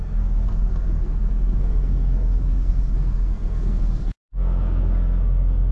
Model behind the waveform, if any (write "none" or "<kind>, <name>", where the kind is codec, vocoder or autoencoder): codec, SNAC